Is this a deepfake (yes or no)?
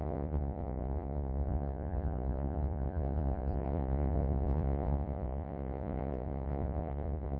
yes